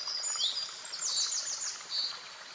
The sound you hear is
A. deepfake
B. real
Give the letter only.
B